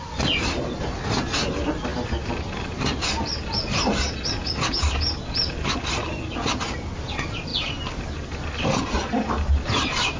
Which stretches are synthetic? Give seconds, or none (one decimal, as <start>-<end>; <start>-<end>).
none